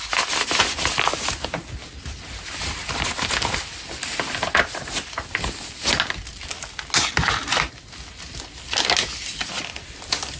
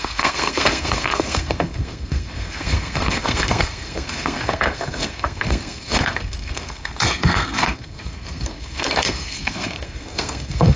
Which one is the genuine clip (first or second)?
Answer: first